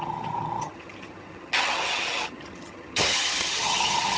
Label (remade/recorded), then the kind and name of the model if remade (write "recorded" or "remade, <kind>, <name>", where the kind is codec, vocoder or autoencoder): remade, vocoder, HiFi-GAN